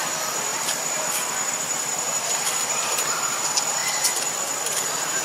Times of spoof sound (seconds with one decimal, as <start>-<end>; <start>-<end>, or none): 0.5-3.4